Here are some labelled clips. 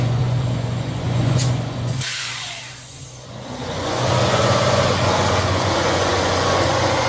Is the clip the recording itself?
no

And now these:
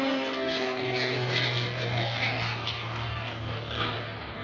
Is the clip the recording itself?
no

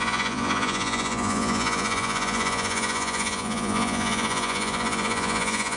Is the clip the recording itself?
no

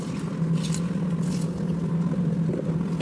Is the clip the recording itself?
yes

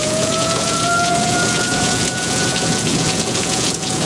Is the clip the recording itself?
no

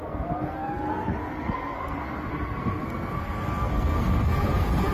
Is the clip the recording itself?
no